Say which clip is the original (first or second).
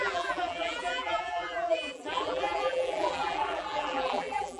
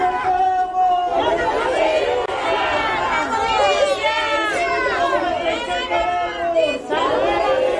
second